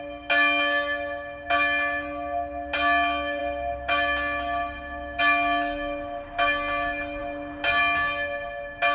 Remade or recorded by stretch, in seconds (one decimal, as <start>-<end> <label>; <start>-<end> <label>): 0.0-8.9 recorded